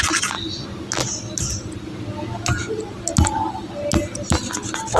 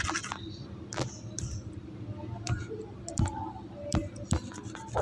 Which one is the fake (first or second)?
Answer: second